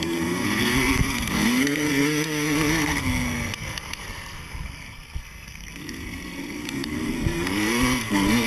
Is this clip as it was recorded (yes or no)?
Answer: no